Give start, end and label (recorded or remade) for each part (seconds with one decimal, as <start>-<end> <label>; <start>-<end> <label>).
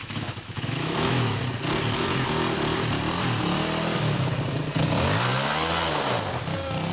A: 0.0-1.4 remade; 1.4-6.9 recorded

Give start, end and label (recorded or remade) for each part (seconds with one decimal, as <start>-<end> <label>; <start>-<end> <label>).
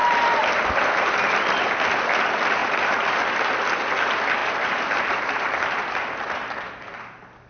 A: 0.0-1.3 remade; 1.3-2.6 recorded; 2.6-3.5 remade; 3.5-4.4 recorded; 4.4-6.5 remade; 6.5-7.5 recorded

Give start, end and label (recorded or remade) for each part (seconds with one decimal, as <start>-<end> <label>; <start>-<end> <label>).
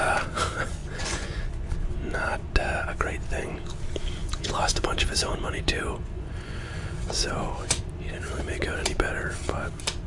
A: 0.0-0.8 recorded; 0.8-1.7 remade; 1.7-4.2 recorded; 4.2-7.8 remade; 7.8-10.1 recorded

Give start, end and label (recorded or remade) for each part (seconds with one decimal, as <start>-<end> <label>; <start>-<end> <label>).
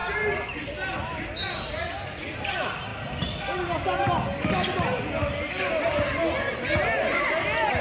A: 0.0-7.8 recorded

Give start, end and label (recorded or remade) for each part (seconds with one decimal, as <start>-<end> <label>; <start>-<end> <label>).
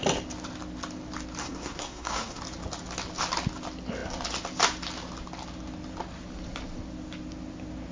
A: 0.0-1.4 recorded; 1.4-2.4 remade; 2.4-7.9 recorded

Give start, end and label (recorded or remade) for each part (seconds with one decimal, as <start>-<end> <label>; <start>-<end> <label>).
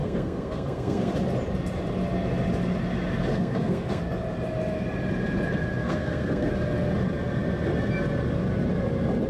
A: 0.0-1.1 remade; 1.1-3.3 recorded; 3.3-4.0 remade; 4.0-5.8 recorded; 5.8-6.5 remade; 6.5-9.3 recorded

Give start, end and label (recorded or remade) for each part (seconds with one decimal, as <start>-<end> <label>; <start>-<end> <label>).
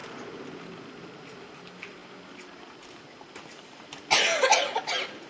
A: 0.0-5.3 recorded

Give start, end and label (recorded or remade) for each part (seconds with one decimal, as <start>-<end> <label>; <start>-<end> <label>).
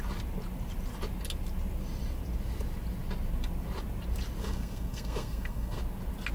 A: 0.0-4.4 recorded; 4.4-5.8 remade; 5.8-6.3 recorded